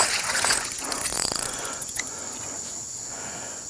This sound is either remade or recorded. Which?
remade